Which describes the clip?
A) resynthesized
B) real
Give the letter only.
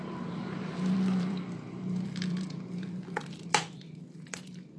A